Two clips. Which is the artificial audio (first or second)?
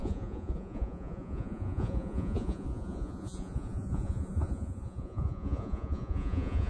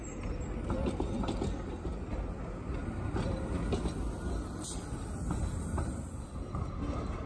first